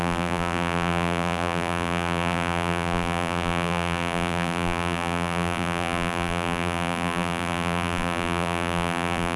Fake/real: fake